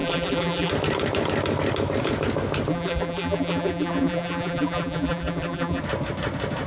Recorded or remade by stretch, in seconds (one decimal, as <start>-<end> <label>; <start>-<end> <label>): 0.0-0.7 remade; 0.7-2.7 recorded; 2.7-5.8 remade; 5.8-6.7 recorded

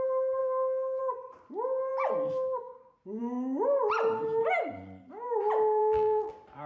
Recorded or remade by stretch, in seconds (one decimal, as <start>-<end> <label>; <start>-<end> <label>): 0.0-0.4 recorded; 0.4-1.0 remade; 1.0-5.8 recorded; 5.8-6.3 remade; 6.3-6.7 recorded

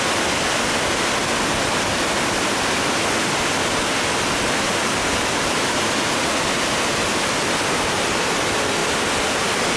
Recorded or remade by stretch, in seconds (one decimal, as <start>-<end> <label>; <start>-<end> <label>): 0.0-9.8 recorded